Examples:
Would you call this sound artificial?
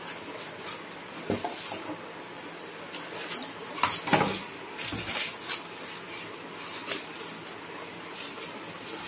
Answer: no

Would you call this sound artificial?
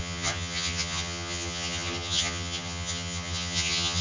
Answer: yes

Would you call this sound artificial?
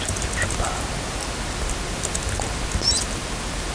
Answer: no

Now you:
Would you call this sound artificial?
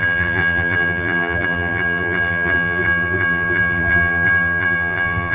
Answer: yes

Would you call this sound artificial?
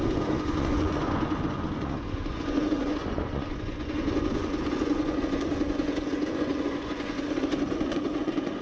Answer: yes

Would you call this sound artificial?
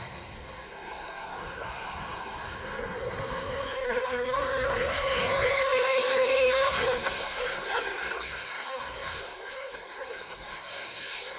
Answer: yes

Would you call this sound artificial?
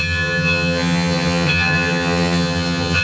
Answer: yes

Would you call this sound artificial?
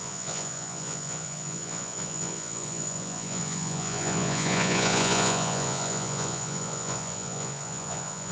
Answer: yes